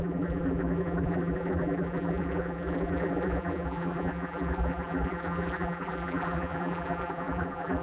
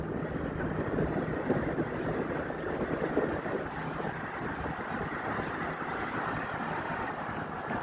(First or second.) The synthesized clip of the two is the first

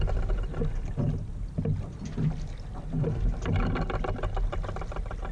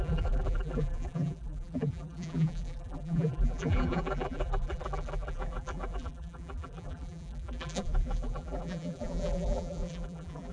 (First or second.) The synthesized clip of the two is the second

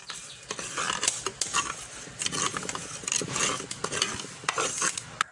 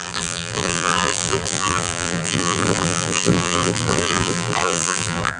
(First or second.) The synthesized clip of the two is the second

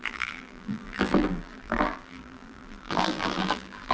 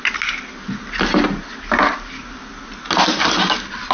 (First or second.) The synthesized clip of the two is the first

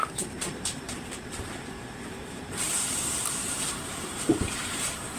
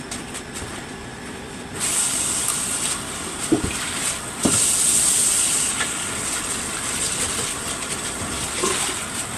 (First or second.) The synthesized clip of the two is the first